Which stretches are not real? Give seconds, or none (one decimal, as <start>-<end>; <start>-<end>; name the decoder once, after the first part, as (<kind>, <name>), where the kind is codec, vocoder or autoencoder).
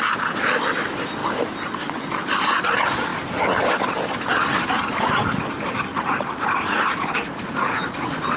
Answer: 5.9-8.4 (vocoder, Vocos)